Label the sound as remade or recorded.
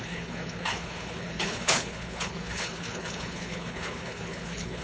remade